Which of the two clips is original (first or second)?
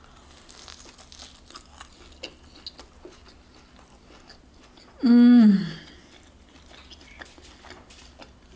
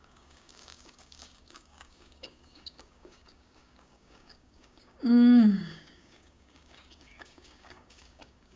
first